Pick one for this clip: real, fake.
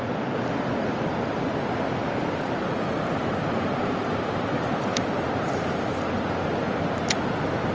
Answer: real